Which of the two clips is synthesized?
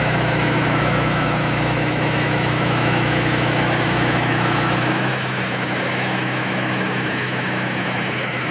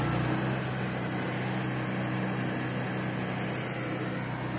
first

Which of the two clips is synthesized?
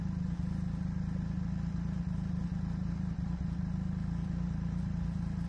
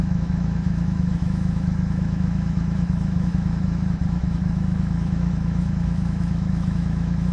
second